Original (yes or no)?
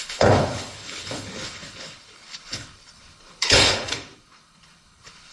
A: no